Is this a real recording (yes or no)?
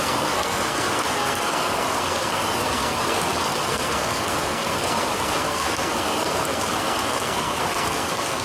no